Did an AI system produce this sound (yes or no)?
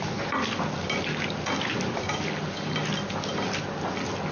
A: no